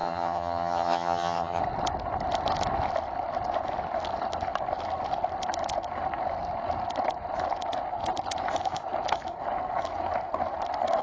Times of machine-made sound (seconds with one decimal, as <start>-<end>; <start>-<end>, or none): 0.0-1.6